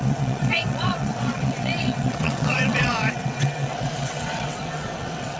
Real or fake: fake